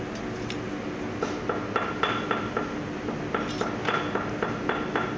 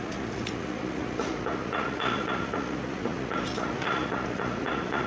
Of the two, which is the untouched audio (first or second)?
first